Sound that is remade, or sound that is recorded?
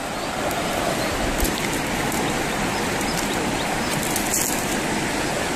recorded